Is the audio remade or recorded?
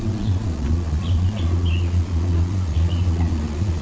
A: remade